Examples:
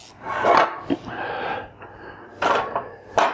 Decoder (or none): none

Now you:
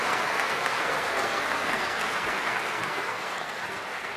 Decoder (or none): codec, SNAC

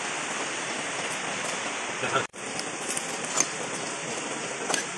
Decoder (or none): none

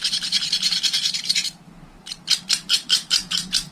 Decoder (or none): vocoder, BigVGAN v2